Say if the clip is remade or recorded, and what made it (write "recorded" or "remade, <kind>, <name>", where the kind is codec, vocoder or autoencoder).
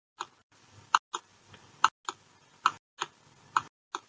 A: recorded